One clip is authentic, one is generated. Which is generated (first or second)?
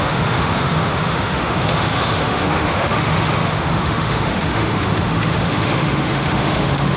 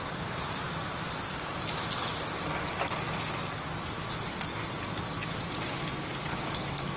first